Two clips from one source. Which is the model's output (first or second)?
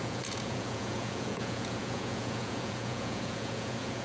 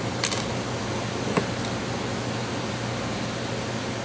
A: first